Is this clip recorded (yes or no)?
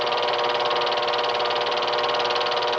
yes